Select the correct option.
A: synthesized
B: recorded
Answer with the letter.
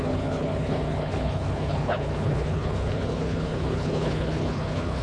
A